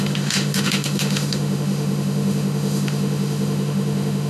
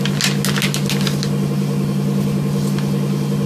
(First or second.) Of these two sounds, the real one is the second